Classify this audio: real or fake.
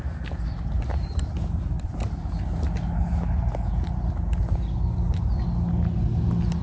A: real